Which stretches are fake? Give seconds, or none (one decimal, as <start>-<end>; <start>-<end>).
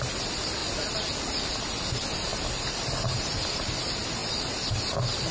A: 0.6-1.8; 2.3-3.8; 4.2-4.8